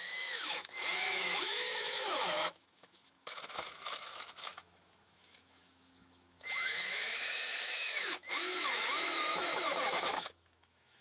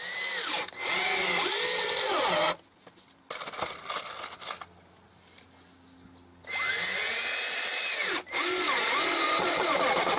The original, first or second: second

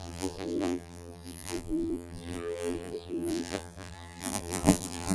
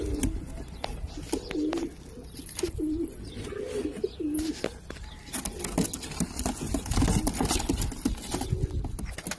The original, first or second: second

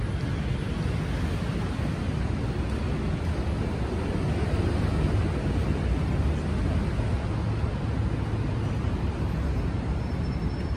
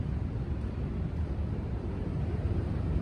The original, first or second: first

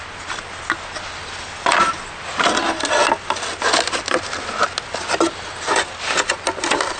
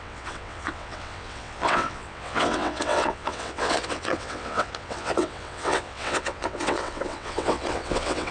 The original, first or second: first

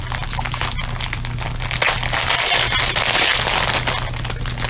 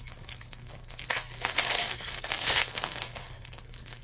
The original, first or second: first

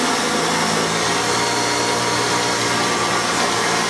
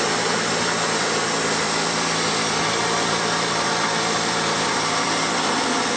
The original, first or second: first